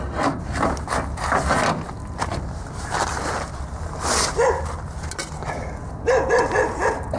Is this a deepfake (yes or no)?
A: no